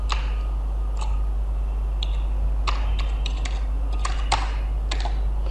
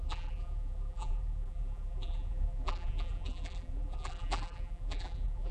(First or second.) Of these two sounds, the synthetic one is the second